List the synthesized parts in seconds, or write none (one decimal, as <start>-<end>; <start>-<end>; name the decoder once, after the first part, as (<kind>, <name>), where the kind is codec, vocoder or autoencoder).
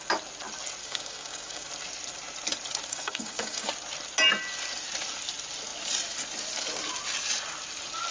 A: 0.8-1.7 (codec, DAC); 2.9-3.7